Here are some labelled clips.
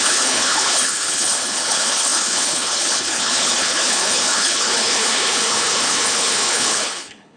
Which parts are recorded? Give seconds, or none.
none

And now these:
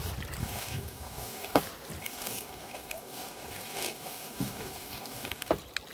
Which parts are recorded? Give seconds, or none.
0.0-0.4; 1.6-2.0; 5.5-5.9